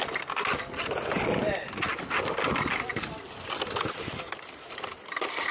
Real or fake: real